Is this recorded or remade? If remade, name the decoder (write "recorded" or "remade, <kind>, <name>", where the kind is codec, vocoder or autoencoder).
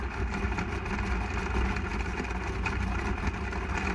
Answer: recorded